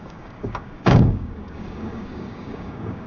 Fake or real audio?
fake